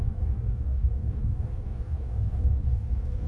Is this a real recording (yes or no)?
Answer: no